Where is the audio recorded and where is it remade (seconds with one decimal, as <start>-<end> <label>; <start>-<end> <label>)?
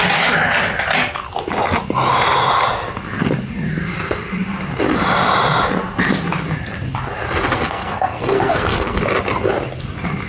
0.0-7.5 recorded; 7.5-9.0 remade; 9.0-10.3 recorded